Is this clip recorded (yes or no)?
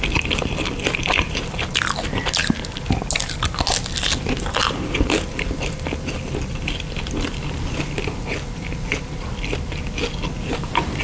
yes